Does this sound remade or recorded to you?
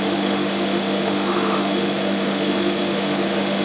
remade